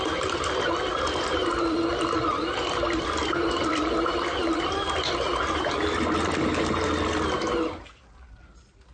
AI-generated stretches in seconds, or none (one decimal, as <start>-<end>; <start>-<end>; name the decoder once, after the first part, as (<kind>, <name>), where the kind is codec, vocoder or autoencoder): 1.4-3.9 (vocoder, BigVGAN v2); 4.4-5.4